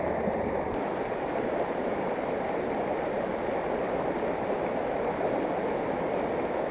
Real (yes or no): yes